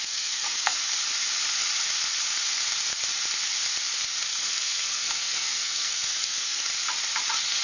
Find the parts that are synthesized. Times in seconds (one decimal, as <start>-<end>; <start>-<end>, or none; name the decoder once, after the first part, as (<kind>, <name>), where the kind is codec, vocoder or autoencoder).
0.0-0.8 (codec, SNAC); 4.3-6.6